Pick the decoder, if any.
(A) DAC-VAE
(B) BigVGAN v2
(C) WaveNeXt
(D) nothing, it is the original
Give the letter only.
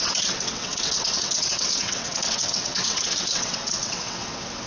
C